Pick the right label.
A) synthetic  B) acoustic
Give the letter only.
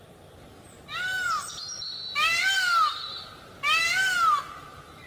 B